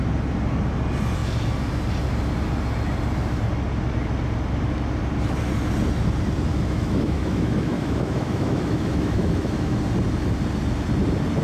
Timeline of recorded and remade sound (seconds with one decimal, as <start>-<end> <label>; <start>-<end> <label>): 0.0-6.5 recorded; 6.5-9.8 remade; 9.8-11.4 recorded